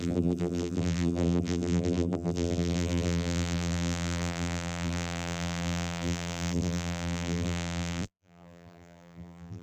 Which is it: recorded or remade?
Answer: remade